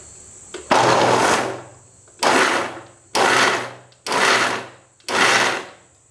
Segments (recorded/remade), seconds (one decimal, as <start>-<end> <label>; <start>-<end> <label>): 0.0-6.1 recorded

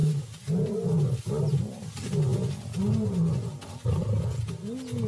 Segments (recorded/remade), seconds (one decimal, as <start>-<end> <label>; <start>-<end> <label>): 0.0-5.1 recorded

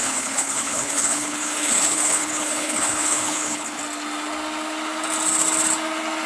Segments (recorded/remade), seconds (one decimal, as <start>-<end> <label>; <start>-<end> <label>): 0.0-3.8 remade; 3.8-6.3 recorded

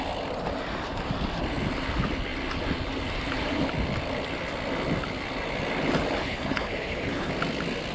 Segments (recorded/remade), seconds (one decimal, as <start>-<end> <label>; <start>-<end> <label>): 0.0-6.2 recorded; 6.2-7.3 remade; 7.3-7.9 recorded

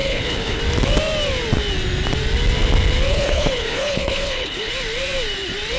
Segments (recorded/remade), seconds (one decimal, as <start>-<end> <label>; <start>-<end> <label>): 0.0-0.6 remade; 0.6-3.1 recorded; 3.1-4.7 remade; 4.7-5.8 recorded

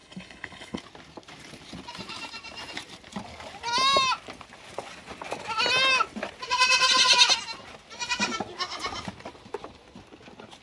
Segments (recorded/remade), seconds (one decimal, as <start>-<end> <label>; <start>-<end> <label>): 0.0-0.8 remade; 0.8-10.6 recorded

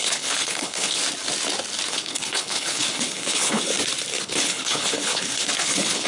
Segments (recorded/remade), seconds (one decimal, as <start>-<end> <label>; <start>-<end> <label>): 0.0-1.0 remade; 1.0-1.9 recorded; 1.9-3.7 remade; 3.7-4.2 recorded; 4.2-6.1 remade